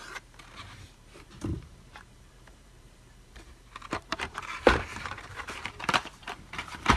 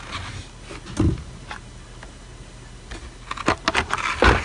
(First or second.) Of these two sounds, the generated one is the first